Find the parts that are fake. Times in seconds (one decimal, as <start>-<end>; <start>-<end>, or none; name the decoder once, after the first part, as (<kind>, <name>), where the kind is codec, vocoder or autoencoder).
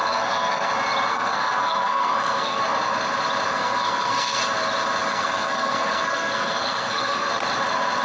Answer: 0.0-0.7 (codec, SNAC); 1.1-2.6; 3.5-4.4; 5.1-7.3